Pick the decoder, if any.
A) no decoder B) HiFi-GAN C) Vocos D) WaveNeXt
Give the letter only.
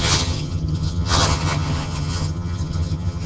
B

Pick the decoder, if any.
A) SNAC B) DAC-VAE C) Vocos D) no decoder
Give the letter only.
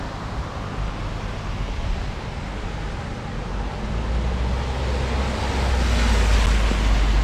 D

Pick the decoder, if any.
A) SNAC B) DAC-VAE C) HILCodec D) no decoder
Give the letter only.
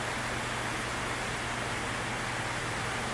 D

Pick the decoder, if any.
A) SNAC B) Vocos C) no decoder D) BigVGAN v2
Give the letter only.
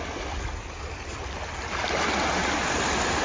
C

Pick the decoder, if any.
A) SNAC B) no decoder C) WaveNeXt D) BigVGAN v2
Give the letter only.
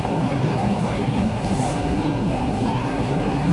A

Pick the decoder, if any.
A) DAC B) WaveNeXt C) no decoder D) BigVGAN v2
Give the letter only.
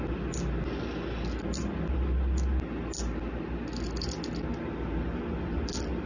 C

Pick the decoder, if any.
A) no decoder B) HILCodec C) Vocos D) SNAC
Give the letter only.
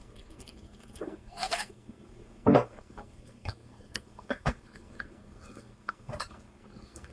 D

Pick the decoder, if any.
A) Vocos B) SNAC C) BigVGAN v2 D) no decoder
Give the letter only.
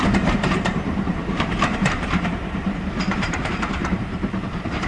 C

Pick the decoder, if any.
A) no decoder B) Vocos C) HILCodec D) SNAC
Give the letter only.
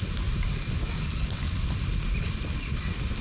A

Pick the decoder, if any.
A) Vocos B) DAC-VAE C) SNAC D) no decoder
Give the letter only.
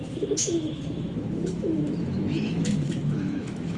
B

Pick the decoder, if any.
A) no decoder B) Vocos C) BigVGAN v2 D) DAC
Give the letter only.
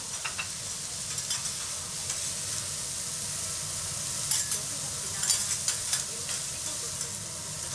A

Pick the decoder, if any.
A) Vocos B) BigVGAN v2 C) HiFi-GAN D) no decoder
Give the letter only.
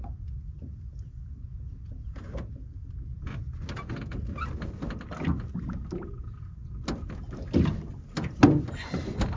D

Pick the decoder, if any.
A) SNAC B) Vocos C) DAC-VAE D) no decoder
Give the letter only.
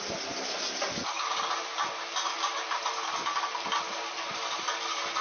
D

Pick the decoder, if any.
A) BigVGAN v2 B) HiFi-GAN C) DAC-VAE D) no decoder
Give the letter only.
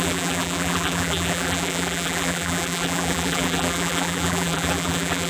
A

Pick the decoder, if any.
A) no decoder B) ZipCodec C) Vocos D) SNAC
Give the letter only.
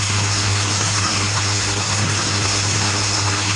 D